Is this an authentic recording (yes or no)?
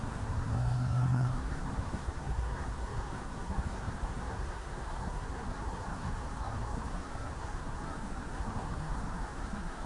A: no